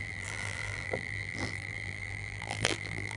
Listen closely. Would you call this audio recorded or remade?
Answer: remade